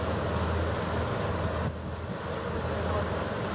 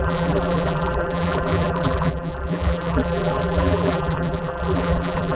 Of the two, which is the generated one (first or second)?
second